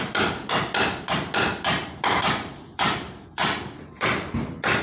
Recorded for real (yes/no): yes